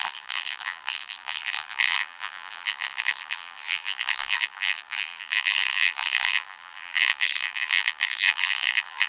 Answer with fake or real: fake